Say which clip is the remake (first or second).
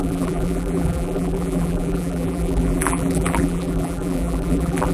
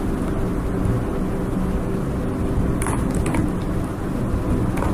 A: first